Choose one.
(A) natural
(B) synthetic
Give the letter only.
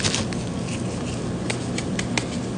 A